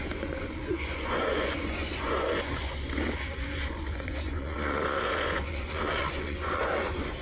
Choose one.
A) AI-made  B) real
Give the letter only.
A